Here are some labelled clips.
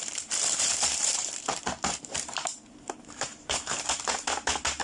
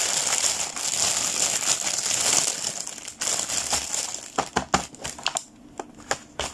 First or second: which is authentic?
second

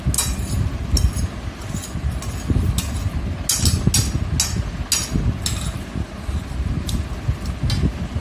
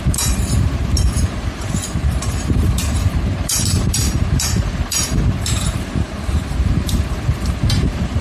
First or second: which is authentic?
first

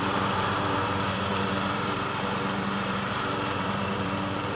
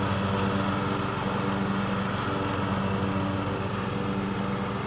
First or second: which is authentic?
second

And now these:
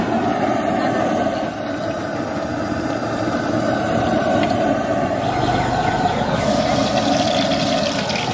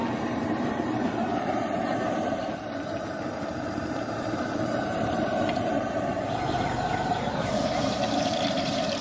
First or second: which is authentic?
first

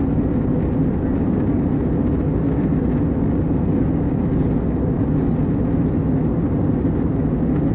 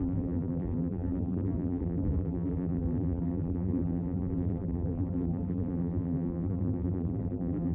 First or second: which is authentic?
first